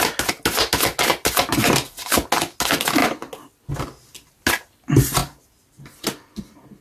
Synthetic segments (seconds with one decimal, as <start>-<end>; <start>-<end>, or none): none